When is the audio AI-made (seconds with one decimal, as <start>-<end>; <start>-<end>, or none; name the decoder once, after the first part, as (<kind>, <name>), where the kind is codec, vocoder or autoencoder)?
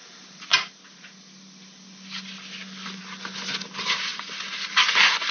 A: none